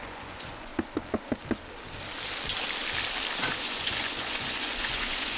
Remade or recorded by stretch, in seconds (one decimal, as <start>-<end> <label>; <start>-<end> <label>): 0.0-0.7 remade; 0.7-3.6 recorded; 3.6-5.4 remade